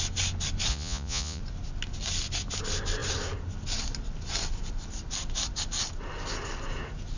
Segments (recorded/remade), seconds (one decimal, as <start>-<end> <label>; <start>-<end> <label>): 0.0-0.7 recorded; 0.7-1.4 remade; 1.4-7.2 recorded